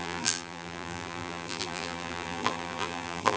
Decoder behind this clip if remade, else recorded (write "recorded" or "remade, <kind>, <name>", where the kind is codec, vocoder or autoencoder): remade, vocoder, BigVGAN v2